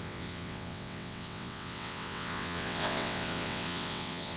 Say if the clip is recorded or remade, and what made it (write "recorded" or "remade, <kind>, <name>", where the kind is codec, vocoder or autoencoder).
remade, vocoder, WaveNeXt